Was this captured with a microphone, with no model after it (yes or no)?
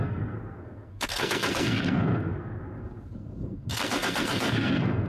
no